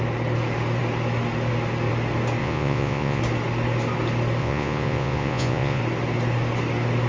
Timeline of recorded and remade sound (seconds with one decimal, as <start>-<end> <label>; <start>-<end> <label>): 0.0-2.4 recorded; 2.4-3.2 remade; 3.2-4.4 recorded; 4.4-5.8 remade; 5.8-7.1 recorded